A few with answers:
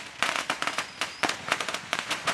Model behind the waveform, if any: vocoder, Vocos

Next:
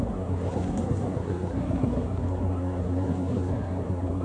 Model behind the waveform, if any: codec, SNAC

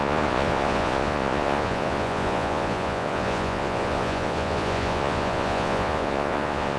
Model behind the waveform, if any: vocoder, Vocos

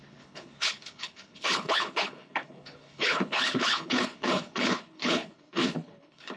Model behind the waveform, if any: codec, HILCodec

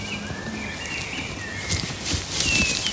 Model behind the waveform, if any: none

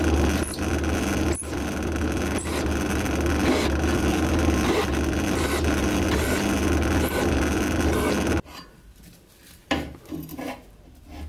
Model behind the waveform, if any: none